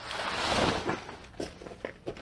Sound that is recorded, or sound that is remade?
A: recorded